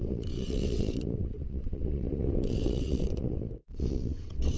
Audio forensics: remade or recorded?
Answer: remade